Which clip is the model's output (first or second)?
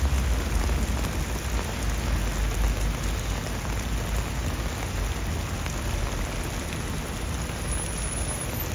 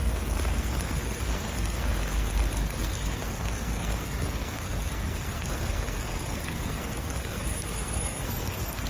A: second